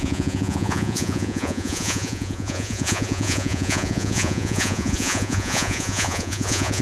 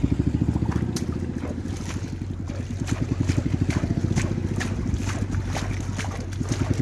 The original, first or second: second